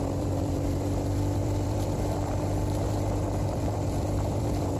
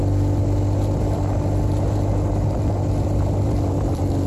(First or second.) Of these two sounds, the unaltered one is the second